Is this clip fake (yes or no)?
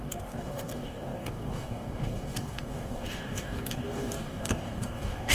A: yes